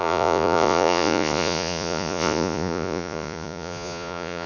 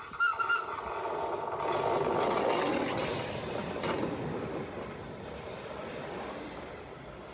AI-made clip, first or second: first